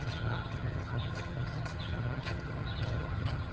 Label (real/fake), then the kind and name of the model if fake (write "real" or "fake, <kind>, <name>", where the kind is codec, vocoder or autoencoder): fake, vocoder, HiFi-GAN